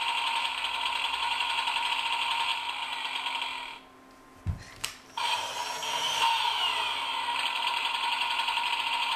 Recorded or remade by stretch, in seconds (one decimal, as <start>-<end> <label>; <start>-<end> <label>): 0.0-2.5 remade; 2.5-4.7 recorded; 4.7-6.7 remade; 6.7-7.8 recorded; 7.8-9.2 remade